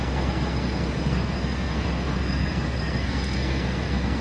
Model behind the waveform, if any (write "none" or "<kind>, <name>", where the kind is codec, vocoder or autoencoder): codec, SNAC